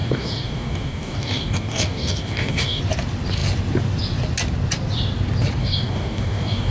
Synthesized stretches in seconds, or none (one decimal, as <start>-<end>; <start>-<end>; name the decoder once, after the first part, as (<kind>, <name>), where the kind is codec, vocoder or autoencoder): 0.0-2.8 (codec, DAC); 5.6-6.7